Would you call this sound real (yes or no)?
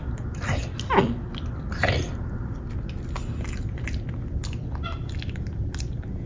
yes